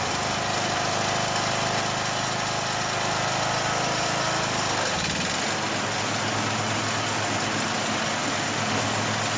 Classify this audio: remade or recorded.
recorded